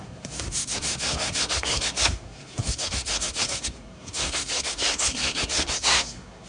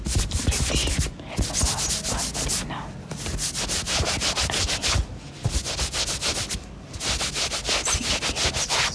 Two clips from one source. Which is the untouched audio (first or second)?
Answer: second